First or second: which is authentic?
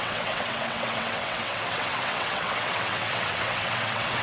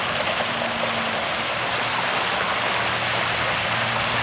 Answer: second